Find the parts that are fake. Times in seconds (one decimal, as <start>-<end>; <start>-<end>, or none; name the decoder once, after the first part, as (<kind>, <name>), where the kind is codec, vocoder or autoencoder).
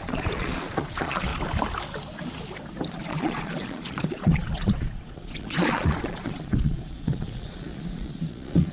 0.0-1.3 (vocoder, Vocos); 2.9-8.7